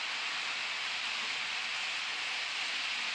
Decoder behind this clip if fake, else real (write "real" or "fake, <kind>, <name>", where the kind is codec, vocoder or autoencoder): real